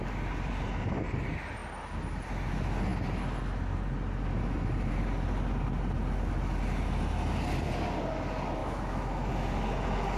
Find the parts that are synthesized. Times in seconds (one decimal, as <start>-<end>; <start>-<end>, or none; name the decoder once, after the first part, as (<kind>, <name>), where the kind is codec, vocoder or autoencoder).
8.6-9.3 (autoencoder, DAC-VAE)